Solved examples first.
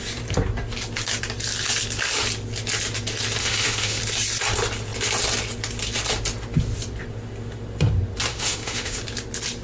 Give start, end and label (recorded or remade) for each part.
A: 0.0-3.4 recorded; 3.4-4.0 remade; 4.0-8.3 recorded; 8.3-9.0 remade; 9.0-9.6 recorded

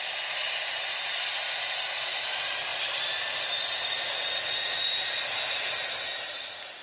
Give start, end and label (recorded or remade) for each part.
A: 0.0-6.8 recorded

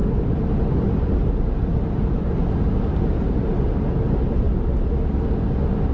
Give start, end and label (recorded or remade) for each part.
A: 0.0-1.1 remade; 1.1-1.6 recorded; 1.6-5.1 remade; 5.1-5.9 recorded

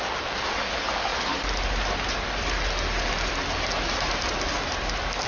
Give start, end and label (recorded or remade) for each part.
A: 0.0-5.3 recorded